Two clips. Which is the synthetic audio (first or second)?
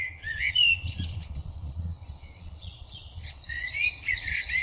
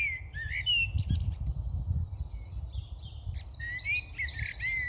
first